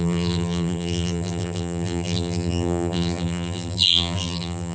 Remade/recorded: remade